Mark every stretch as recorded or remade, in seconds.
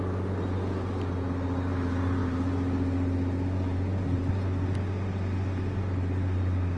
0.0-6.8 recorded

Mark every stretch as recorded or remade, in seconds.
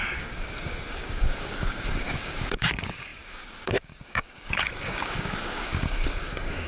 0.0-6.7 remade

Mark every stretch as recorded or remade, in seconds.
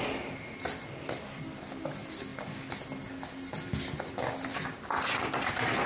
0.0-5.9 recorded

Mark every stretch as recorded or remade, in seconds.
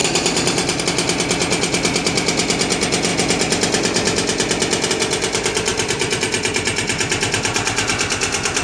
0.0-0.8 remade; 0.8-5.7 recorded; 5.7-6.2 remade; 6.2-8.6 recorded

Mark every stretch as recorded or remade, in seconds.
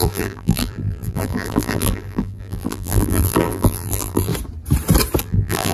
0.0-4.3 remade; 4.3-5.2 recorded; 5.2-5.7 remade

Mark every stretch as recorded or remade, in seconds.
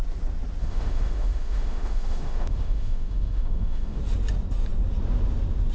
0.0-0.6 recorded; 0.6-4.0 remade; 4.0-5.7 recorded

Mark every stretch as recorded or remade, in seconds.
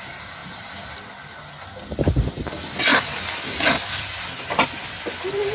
0.0-5.5 recorded